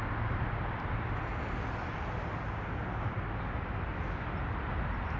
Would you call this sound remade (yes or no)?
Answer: no